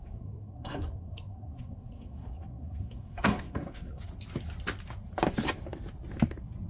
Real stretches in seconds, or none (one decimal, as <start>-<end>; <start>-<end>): 4.0-6.7